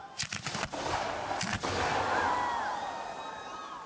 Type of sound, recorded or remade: recorded